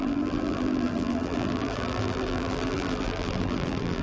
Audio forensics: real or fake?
fake